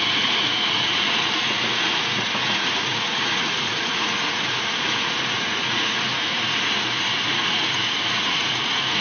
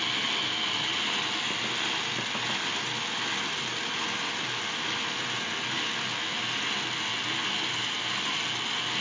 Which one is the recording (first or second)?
second